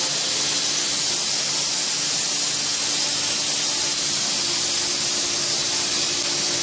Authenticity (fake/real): real